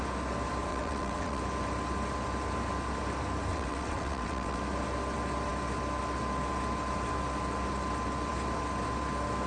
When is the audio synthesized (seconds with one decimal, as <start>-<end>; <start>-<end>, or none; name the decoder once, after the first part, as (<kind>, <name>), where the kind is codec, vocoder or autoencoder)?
0.7-1.4 (vocoder, WaveNeXt); 3.5-4.6